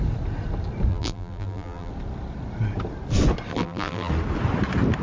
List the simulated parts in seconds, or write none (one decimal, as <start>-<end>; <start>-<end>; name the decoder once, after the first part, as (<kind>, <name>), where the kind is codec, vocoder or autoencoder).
0.9-1.9 (vocoder, BigVGAN v2); 3.5-4.1